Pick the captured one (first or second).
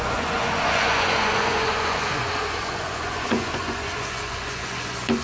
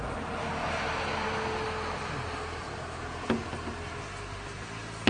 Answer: second